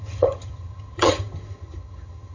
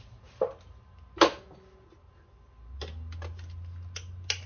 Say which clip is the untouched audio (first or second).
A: second